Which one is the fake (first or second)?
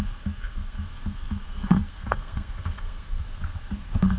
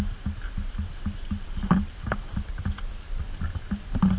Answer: first